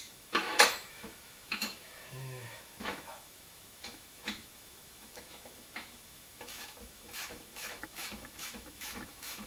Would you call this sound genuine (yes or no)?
no